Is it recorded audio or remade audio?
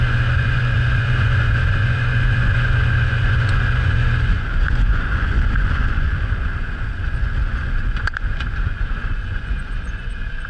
remade